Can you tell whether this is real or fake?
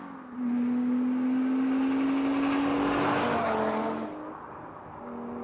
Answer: real